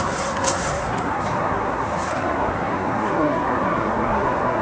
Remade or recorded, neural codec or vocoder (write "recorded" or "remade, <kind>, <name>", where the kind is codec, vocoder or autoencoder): remade, codec, SNAC